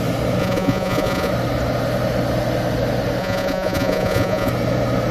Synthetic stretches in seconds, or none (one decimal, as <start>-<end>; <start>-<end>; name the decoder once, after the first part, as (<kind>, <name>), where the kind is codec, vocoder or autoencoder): 0.4-1.3 (vocoder, Vocos); 3.2-4.5